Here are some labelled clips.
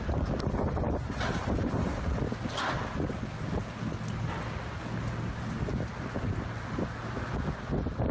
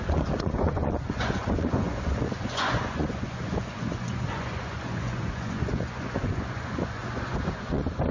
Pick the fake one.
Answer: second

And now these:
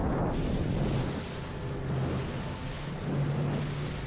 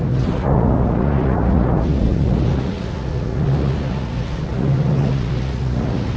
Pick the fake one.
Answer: second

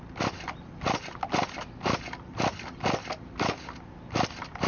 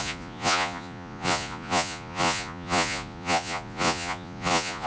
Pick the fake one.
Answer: second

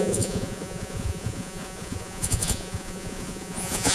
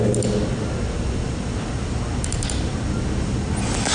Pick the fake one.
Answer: first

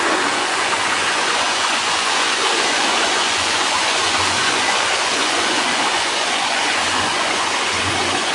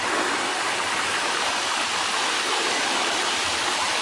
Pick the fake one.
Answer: first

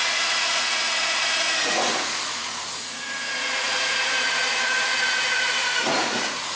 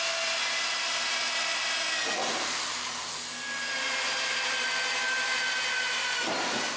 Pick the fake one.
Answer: first